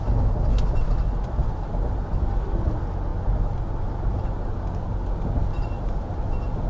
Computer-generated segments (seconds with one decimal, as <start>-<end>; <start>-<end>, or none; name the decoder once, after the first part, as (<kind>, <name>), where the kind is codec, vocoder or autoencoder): none